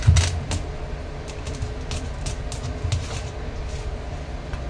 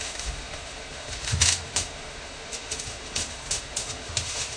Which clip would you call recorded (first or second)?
first